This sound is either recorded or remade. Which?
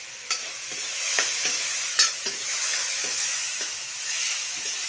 remade